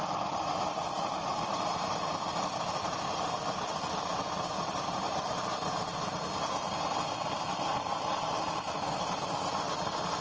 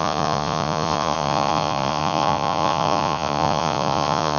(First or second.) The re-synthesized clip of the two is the second